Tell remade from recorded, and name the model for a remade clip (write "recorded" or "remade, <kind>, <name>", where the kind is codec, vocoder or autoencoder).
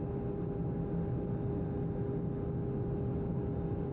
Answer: recorded